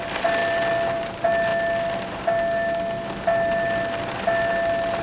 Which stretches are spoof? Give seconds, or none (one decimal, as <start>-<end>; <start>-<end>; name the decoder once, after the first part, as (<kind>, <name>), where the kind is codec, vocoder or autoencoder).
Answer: none